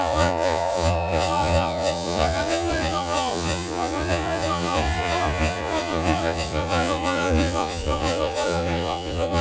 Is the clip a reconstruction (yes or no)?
yes